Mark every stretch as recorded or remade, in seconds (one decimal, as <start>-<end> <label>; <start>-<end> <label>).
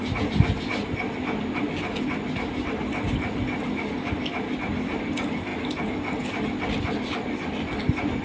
0.0-8.2 recorded